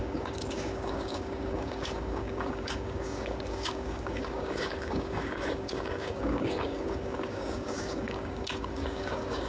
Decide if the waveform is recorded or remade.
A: remade